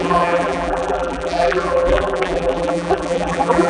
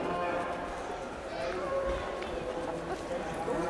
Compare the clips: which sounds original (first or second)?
second